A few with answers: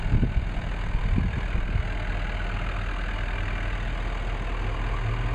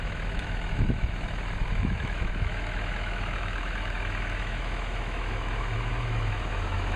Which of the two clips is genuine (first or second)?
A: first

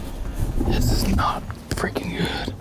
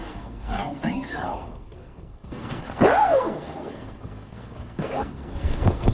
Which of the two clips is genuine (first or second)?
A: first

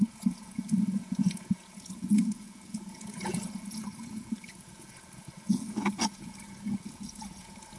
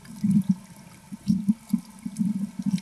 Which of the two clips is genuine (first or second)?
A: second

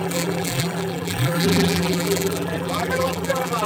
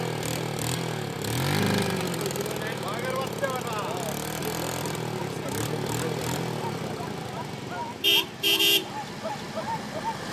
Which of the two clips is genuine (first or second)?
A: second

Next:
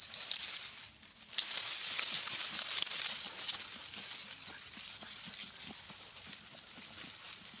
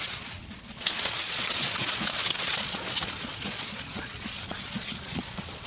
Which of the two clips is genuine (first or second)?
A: first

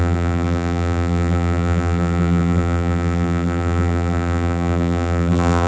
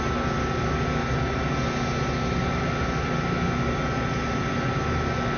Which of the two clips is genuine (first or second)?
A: second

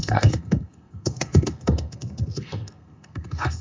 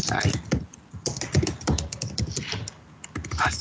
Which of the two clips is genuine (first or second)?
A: second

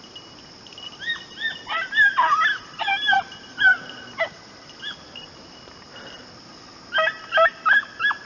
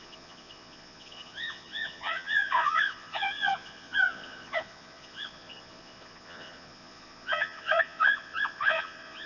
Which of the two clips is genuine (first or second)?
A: first